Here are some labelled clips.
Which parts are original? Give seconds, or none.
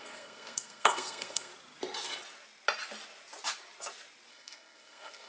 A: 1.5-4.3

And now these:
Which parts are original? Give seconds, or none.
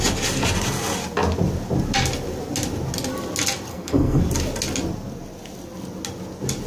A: 0.0-3.7; 4.2-6.7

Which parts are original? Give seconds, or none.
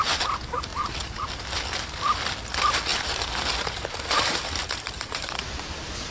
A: 0.0-0.7; 1.2-2.9; 5.5-6.1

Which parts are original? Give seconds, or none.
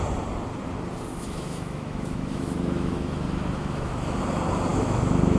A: 0.0-1.1; 4.2-4.7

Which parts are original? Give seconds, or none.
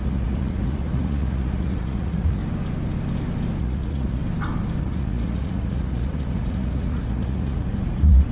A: 2.4-3.6; 4.2-4.8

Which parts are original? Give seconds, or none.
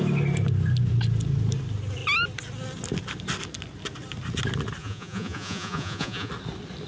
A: 0.0-4.8; 6.3-6.9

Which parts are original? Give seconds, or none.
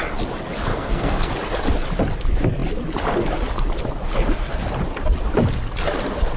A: 0.0-0.7; 1.3-6.4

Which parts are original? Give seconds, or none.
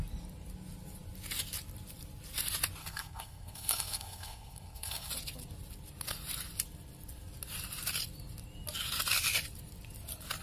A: 0.0-2.8; 5.1-10.4